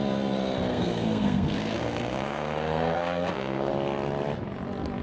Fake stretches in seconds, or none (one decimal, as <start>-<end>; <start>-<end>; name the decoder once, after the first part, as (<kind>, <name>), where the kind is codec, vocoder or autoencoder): 0.7-3.7 (codec, SNAC)